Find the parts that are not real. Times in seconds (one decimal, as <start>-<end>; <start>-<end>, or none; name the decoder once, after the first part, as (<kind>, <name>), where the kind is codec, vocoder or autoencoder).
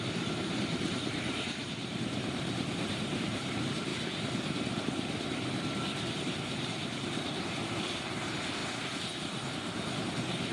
0.0-3.9 (vocoder, BigVGAN v2); 6.1-10.5